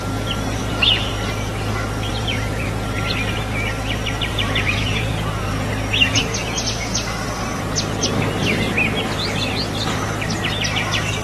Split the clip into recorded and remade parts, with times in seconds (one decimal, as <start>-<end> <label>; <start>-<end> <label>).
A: 0.0-0.6 recorded; 0.6-1.1 remade; 1.1-2.1 recorded; 2.1-2.7 remade; 2.7-4.3 recorded; 4.3-5.7 remade; 5.7-11.2 recorded